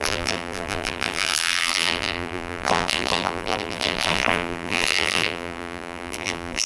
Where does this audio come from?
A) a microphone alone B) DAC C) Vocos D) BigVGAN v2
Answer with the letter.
D